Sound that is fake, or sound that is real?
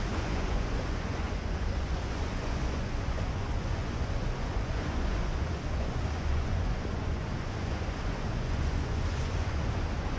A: fake